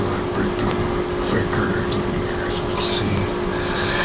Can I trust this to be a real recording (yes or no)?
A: yes